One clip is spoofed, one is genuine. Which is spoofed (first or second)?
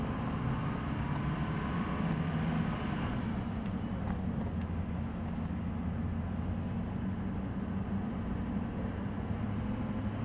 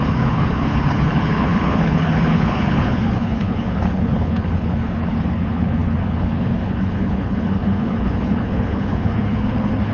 second